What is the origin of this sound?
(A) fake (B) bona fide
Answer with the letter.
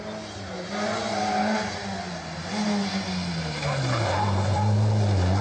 B